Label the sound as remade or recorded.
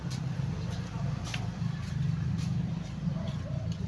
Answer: remade